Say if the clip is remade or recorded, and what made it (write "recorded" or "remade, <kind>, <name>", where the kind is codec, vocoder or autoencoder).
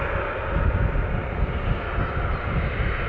recorded